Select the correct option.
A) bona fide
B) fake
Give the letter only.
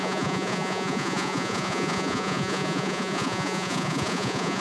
B